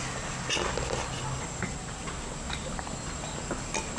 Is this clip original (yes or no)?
yes